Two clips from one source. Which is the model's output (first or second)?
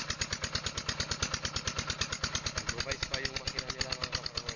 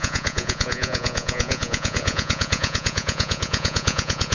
second